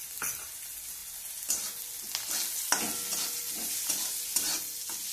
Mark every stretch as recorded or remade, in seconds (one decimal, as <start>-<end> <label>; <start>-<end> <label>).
0.0-5.1 recorded